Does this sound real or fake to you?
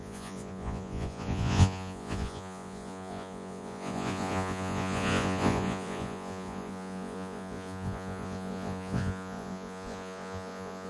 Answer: fake